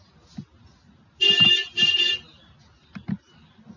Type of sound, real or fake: real